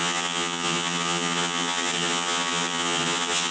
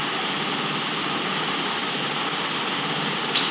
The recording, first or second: second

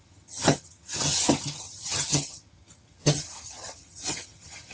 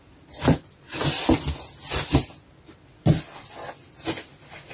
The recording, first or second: second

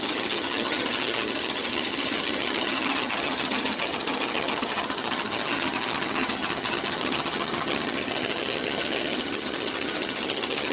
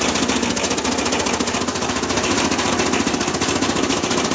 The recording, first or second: second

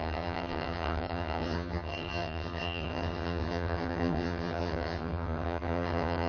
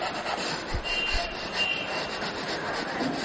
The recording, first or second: second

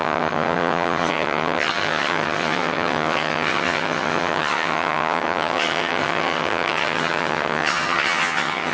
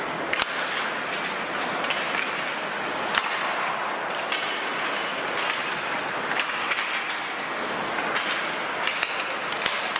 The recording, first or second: second